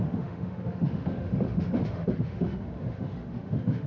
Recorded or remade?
remade